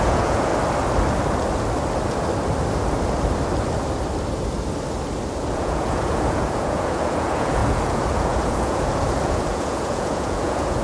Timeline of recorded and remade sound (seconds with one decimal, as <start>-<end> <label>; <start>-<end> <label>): 0.0-0.5 remade; 0.5-5.5 recorded; 5.5-10.8 remade